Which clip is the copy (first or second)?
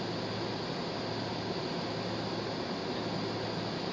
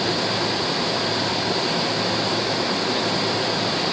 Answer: second